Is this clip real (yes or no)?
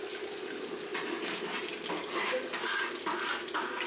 yes